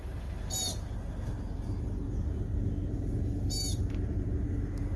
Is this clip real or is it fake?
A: real